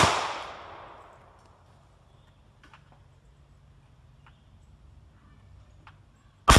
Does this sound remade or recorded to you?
recorded